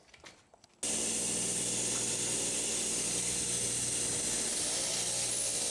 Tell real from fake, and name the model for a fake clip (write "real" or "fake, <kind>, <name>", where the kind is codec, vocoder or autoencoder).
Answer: real